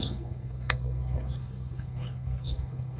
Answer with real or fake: fake